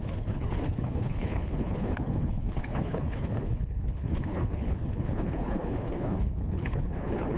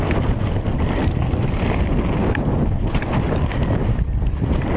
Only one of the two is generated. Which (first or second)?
first